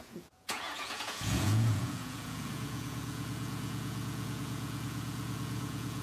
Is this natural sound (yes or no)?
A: no